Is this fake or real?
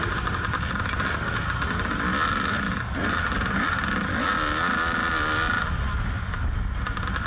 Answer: real